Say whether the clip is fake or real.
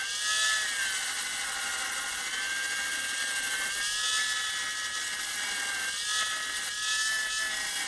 real